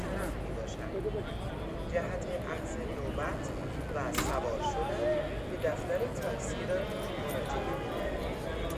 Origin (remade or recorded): recorded